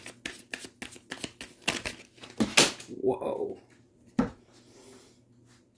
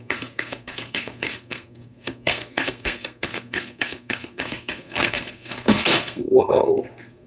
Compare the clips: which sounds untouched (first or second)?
first